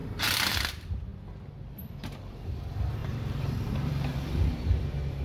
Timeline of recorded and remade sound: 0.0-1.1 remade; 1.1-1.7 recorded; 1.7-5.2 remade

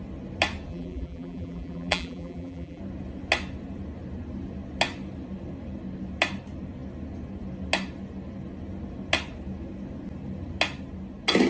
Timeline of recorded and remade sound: 0.0-0.7 recorded; 0.7-2.8 remade; 2.8-11.5 recorded

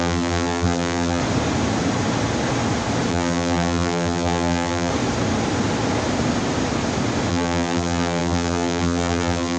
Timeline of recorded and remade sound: 0.0-1.2 remade; 1.2-3.1 recorded; 3.1-4.9 remade; 4.9-7.3 recorded; 7.3-9.6 remade

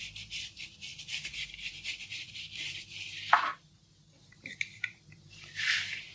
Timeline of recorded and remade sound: 0.0-3.5 remade; 3.5-4.2 recorded; 4.2-6.1 remade

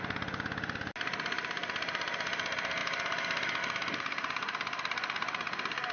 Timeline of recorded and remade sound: 0.0-5.9 recorded